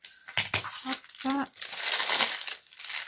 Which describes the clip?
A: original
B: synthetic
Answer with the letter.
A